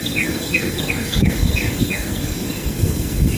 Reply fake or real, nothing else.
fake